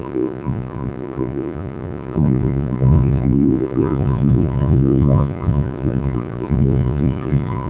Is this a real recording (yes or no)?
no